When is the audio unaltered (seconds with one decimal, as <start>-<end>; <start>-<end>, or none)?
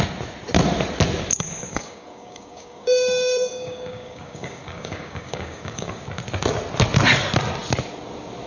0.0-1.3; 6.0-8.5